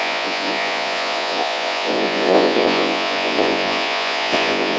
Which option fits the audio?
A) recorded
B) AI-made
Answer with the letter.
B